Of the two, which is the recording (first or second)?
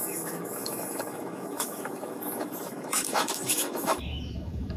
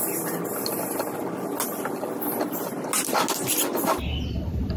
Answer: second